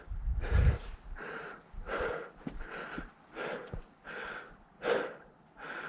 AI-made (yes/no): no